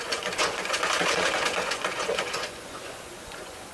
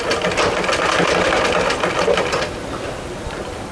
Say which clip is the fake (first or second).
first